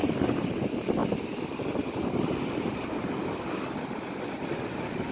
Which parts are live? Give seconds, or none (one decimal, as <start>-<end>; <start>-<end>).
1.0-4.1

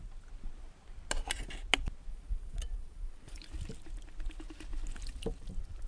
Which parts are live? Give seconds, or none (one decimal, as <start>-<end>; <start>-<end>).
0.0-2.1; 3.4-5.9

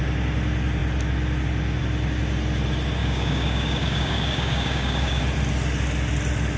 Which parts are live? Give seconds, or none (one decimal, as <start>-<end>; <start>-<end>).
0.0-3.0; 5.2-6.6